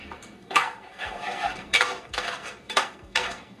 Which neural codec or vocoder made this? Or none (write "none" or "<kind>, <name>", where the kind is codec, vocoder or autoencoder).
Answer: codec, SNAC